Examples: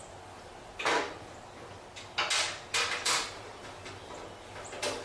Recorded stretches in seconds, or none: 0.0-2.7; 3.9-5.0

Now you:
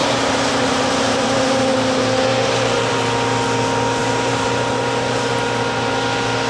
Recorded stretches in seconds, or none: 1.7-2.3; 2.9-4.0; 5.3-6.5